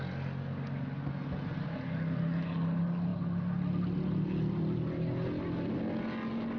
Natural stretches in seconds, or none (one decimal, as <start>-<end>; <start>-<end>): 0.0-6.6